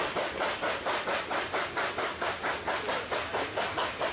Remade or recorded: recorded